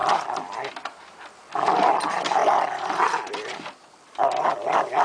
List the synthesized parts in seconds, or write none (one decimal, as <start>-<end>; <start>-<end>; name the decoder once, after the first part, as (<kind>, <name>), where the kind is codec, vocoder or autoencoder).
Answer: none